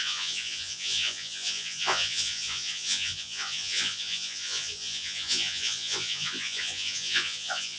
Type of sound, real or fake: fake